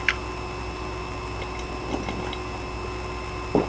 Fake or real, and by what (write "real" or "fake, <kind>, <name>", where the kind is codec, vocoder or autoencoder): real